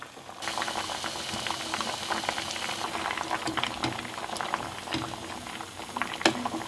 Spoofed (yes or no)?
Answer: no